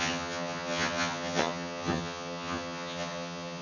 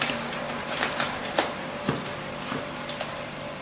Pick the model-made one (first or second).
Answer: first